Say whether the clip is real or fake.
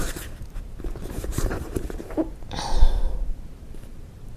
fake